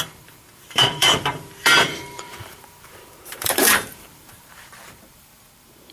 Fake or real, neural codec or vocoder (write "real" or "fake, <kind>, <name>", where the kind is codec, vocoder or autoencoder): fake, vocoder, BigVGAN v2